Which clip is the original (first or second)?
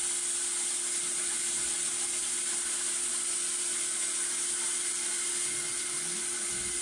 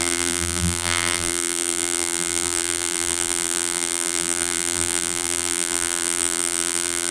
first